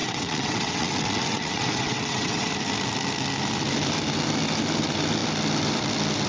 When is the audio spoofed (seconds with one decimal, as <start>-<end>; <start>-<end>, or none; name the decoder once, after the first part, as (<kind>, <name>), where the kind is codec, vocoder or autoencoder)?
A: 0.0-2.5 (vocoder, WaveNeXt)